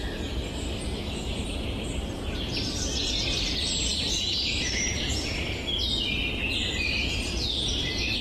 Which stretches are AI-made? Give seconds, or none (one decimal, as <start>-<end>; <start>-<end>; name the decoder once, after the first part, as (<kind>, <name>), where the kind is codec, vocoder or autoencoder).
0.0-8.2 (vocoder, BigVGAN v2)